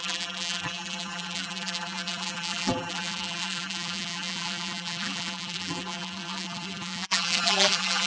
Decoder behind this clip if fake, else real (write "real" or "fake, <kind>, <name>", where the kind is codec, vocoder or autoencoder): fake, vocoder, BigVGAN v2